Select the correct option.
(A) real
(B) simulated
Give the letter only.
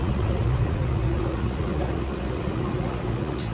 B